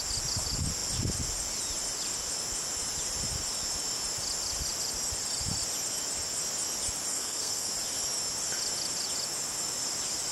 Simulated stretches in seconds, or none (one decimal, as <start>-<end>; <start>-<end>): 7.1-7.7